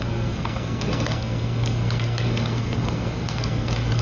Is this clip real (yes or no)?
no